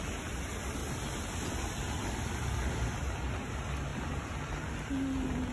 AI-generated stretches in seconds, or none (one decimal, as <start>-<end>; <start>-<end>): 3.9-4.4